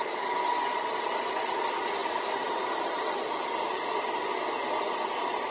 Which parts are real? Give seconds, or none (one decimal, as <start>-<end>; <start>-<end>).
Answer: 0.0-5.5